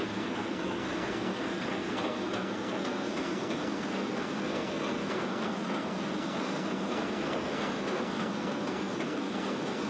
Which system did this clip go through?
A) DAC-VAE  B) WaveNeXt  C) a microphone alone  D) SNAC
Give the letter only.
D